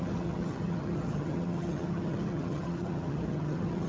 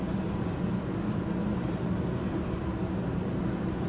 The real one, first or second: second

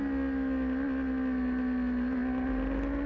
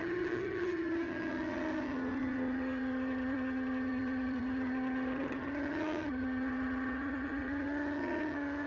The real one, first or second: first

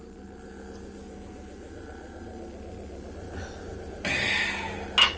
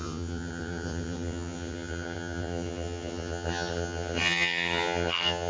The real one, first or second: first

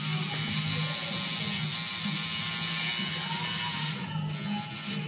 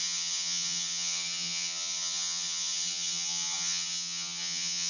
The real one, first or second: first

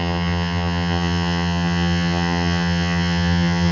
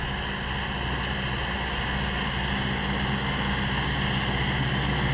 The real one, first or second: second